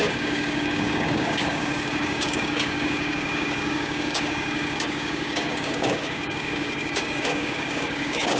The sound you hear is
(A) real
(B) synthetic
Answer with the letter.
B